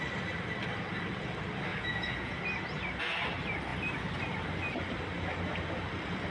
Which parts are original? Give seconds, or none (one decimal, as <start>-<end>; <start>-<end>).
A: 0.0-1.7; 2.4-6.3